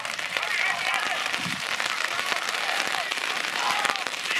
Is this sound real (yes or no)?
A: no